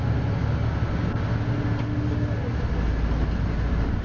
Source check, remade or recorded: recorded